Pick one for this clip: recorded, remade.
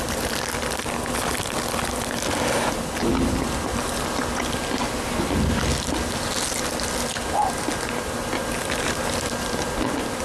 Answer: recorded